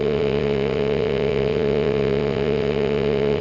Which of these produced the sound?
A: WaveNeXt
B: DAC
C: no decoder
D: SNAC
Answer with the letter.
A